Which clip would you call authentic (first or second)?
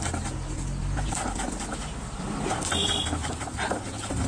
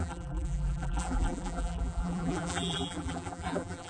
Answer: first